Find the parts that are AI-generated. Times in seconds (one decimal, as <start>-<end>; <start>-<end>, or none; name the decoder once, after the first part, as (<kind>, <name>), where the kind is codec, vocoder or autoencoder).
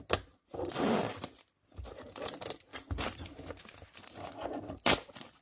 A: none